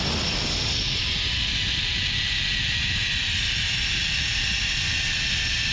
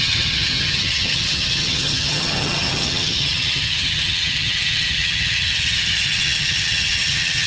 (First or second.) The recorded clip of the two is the first